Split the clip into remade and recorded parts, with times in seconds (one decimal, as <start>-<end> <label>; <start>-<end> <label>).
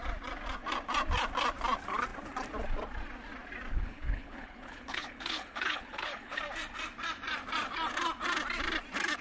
0.0-3.7 recorded; 3.7-6.4 remade; 6.4-9.2 recorded